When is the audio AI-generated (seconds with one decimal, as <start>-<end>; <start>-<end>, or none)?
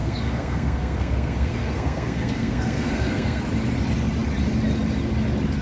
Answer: 0.0-3.4